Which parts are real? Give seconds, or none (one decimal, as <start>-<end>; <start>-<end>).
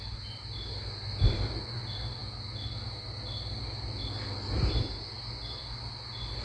0.0-6.4